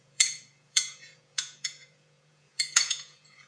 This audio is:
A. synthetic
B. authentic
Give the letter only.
A